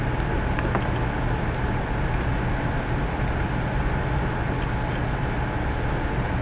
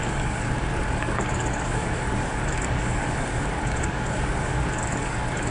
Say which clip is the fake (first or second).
second